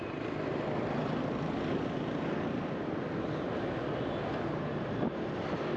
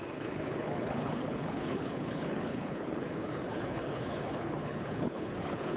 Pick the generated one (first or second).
second